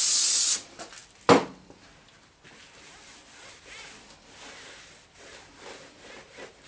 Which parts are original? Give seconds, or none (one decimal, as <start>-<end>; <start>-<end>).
0.0-6.7